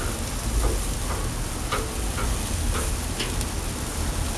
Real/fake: real